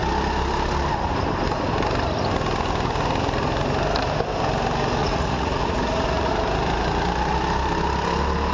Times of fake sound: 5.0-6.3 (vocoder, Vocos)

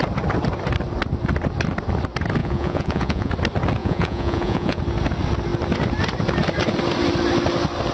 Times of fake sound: 2.4-3.3 (vocoder, Vocos); 3.8-4.8